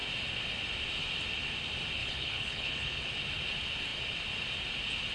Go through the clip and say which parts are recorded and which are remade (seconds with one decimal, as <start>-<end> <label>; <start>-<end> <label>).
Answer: 0.0-2.0 recorded; 2.0-3.1 remade; 3.1-5.1 recorded